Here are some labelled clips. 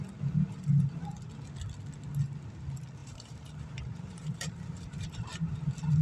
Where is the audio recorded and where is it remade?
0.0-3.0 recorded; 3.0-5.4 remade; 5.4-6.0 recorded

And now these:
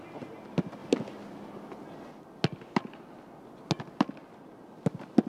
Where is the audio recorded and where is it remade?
0.0-5.3 recorded

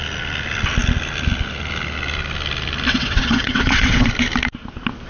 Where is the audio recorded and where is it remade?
0.0-2.9 recorded; 2.9-4.1 remade; 4.1-5.1 recorded

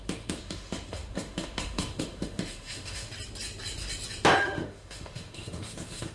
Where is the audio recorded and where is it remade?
0.0-3.1 remade; 3.1-4.4 recorded; 4.4-6.1 remade